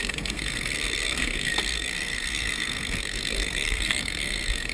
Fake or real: fake